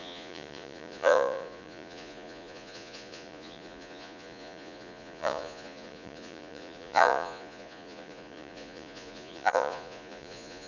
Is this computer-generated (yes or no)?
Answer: yes